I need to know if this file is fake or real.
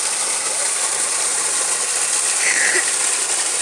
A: real